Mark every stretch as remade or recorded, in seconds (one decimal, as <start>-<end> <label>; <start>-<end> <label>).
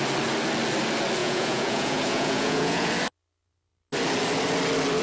0.0-1.2 recorded; 1.2-2.9 remade; 2.9-5.0 recorded